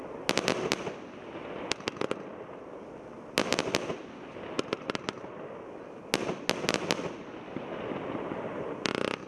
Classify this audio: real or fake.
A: real